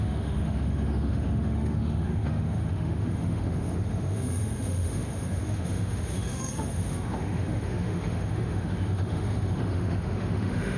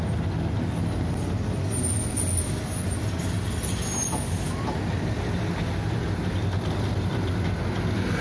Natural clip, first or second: second